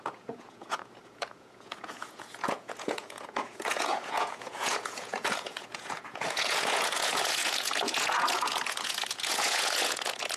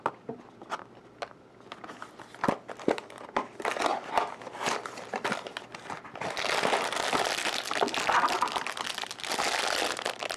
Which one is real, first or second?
second